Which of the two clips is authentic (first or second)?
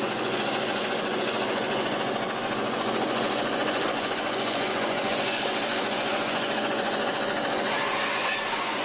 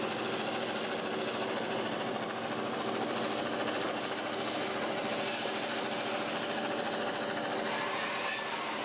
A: second